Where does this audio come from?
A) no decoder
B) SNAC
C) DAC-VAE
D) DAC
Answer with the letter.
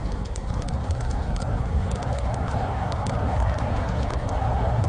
B